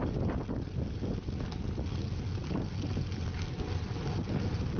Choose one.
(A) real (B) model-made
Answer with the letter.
A